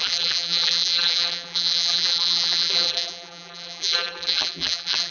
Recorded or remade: remade